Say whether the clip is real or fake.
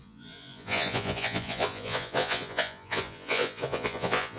fake